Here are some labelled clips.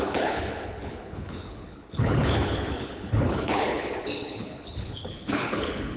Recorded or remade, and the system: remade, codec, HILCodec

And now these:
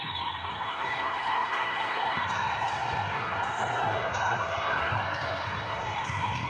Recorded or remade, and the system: remade, codec, SNAC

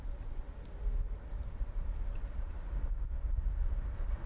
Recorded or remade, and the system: recorded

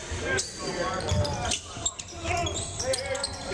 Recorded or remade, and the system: recorded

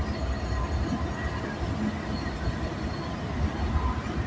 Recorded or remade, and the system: recorded